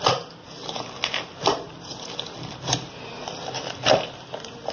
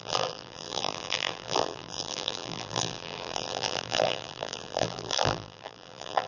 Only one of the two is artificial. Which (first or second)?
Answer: second